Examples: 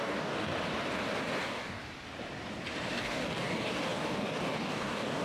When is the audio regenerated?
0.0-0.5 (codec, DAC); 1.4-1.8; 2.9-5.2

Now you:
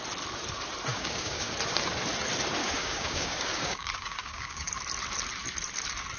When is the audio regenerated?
0.9-1.5 (codec, DAC); 2.6-4.7

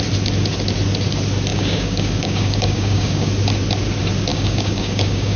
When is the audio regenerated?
1.5-3.3 (codec, DAC); 4.3-5.4

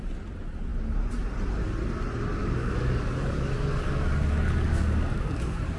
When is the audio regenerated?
2.4-5.8 (codec, DAC)

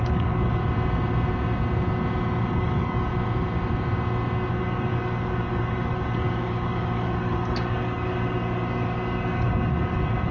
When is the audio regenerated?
0.0-0.6 (codec, DAC); 2.5-3.1; 4.5-10.3